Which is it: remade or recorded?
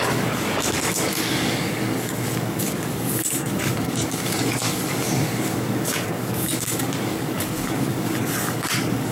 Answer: remade